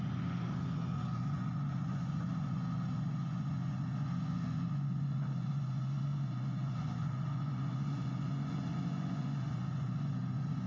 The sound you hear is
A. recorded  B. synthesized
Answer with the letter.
B